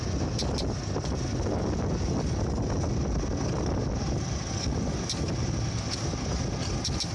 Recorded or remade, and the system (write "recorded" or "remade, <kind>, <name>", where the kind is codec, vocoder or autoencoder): recorded